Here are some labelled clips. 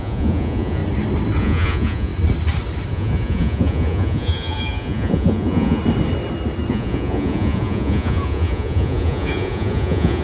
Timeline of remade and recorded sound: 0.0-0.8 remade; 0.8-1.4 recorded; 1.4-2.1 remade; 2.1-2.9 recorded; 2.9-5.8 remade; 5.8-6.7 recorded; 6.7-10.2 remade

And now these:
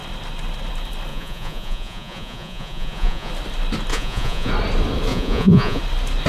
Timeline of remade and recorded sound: 0.0-1.1 recorded; 1.1-3.3 remade; 3.3-3.9 recorded; 3.9-4.5 remade; 4.5-5.1 recorded; 5.1-5.8 remade; 5.8-6.3 recorded

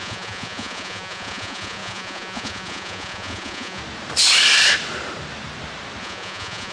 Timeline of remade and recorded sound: 0.0-3.8 remade; 3.8-6.0 recorded; 6.0-6.7 remade

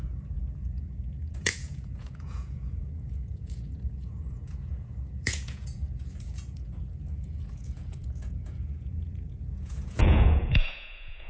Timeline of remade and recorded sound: 0.0-11.3 remade

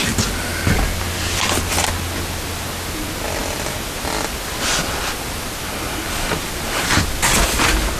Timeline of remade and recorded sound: 0.0-8.0 recorded

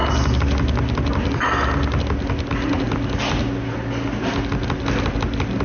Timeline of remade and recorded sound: 0.0-5.6 recorded

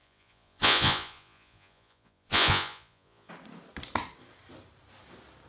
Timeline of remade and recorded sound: 0.0-3.3 remade; 3.3-5.5 recorded

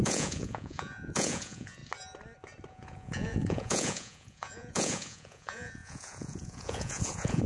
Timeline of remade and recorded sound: 0.0-1.8 remade; 1.8-2.7 recorded; 2.7-7.5 remade